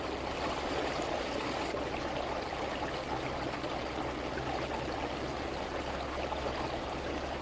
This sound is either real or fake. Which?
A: real